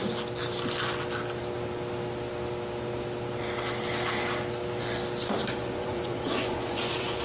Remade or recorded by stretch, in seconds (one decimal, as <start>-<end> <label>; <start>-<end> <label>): 0.0-5.4 recorded; 5.4-7.2 remade

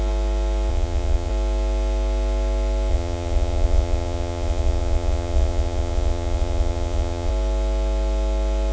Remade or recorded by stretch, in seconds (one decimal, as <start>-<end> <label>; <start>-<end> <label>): 0.0-0.7 recorded; 0.7-1.3 remade; 1.3-2.9 recorded; 2.9-7.3 remade; 7.3-8.7 recorded

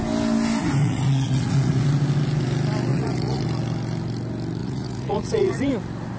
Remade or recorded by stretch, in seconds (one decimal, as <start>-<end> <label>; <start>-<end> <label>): 0.0-0.8 recorded; 0.8-1.8 remade; 1.8-2.9 recorded; 2.9-3.4 remade; 3.4-4.6 recorded; 4.6-5.7 remade; 5.7-6.2 recorded

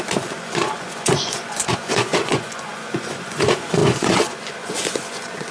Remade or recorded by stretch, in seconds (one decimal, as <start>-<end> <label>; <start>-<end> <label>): 0.0-5.5 remade

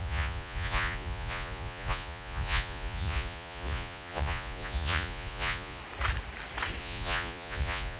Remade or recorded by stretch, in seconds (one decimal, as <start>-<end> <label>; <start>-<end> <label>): 0.0-5.8 remade; 5.8-6.8 recorded; 6.8-8.0 remade

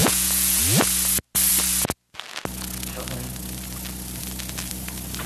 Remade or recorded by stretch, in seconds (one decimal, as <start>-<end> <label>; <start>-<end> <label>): 0.0-0.6 remade; 0.6-5.3 recorded